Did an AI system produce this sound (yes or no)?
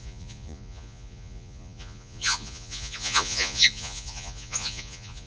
yes